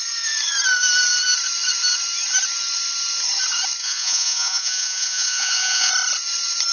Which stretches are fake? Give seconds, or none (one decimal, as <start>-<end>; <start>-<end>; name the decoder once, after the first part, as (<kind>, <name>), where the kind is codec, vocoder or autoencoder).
3.8-5.9 (vocoder, Vocos)